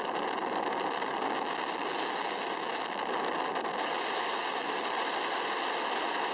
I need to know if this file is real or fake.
real